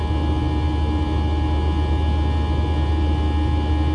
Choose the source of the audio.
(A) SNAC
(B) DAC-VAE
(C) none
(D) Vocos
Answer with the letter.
C